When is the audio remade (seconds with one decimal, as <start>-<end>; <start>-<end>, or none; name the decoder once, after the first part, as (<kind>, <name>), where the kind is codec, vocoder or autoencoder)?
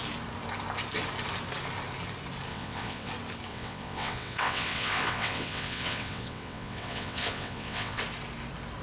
2.5-3.1 (vocoder, WaveNeXt); 3.5-8.0